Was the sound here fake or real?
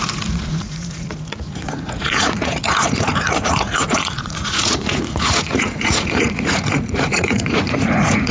fake